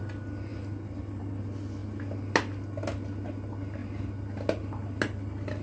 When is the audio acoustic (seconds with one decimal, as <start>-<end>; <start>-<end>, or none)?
0.0-5.6